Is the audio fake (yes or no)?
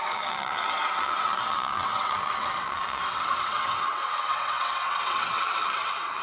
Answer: yes